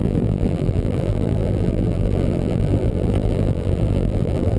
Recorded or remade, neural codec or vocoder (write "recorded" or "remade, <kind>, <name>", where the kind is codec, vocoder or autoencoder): remade, vocoder, BigVGAN v2